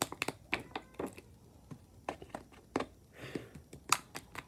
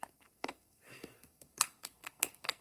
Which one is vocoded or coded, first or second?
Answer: second